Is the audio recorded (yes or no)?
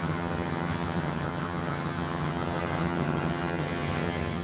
no